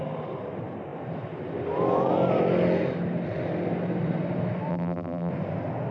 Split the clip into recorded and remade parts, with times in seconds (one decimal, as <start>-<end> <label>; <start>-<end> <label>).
0.0-4.7 recorded; 4.7-5.3 remade; 5.3-5.9 recorded